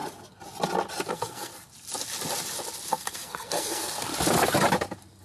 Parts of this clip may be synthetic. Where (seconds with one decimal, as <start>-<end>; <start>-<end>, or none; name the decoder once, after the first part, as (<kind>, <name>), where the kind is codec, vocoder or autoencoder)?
1.1-1.5 (codec, SNAC); 2.9-4.1